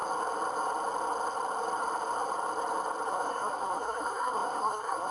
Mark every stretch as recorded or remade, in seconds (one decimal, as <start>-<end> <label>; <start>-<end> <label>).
0.0-3.1 recorded; 3.1-5.1 remade